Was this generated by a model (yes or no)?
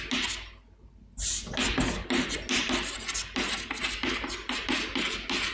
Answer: no